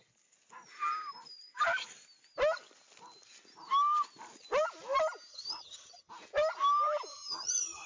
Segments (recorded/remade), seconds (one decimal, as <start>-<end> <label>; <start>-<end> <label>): 0.0-5.3 recorded; 5.3-6.1 remade; 6.1-7.1 recorded; 7.1-7.9 remade